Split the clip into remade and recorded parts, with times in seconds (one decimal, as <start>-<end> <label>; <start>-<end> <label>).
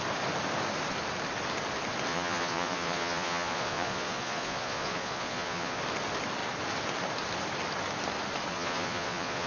0.0-2.1 recorded; 2.1-5.8 remade; 5.8-8.5 recorded; 8.5-9.5 remade